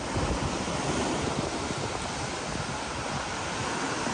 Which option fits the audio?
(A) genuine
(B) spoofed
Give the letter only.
A